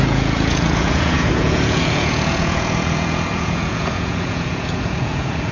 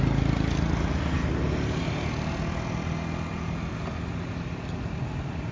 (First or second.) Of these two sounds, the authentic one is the second